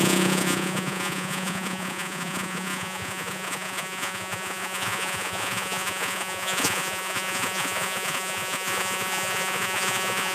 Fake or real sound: fake